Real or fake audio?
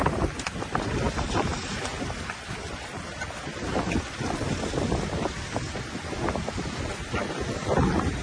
real